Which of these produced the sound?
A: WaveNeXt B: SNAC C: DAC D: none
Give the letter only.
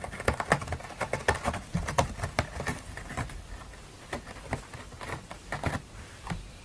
D